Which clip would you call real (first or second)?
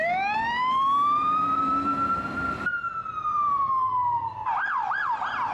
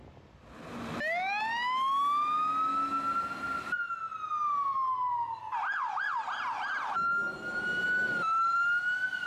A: second